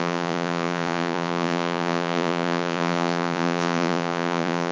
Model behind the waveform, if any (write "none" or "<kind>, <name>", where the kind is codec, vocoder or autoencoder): vocoder, Vocos